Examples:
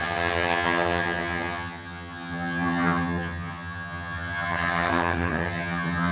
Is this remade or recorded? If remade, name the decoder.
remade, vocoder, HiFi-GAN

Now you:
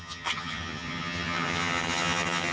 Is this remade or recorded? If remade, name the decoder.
remade, vocoder, HiFi-GAN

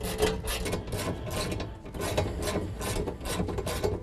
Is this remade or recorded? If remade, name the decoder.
recorded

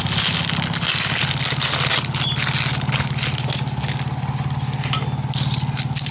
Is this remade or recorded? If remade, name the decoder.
recorded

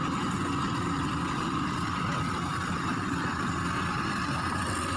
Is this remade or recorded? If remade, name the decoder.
recorded